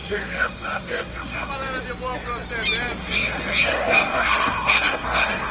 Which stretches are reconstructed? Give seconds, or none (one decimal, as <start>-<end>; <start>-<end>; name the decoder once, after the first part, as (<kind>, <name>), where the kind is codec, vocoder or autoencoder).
0.0-1.5 (codec, SNAC); 3.0-5.5